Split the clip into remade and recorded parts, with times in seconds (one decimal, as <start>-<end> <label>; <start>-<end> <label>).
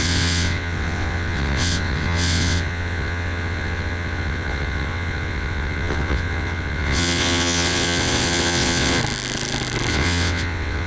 0.0-9.0 remade; 9.0-9.9 recorded; 9.9-10.9 remade